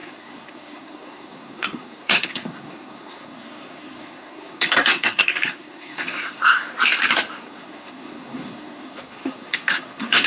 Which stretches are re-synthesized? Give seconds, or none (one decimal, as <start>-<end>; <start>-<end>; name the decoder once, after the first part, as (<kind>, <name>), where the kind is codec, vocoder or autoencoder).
0.0-6.7 (codec, SNAC); 7.3-10.3